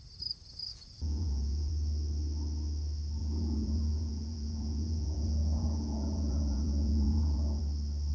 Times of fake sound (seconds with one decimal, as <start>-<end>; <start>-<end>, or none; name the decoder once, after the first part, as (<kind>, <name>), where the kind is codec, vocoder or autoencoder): 0.7-1.7 (vocoder, Vocos); 3.2-7.6